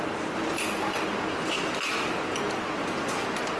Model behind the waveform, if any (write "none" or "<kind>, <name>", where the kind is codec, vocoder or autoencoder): none